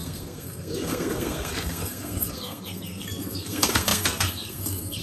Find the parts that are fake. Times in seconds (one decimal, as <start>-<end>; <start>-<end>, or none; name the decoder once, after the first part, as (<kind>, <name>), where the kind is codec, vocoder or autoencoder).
0.0-5.0 (codec, SNAC)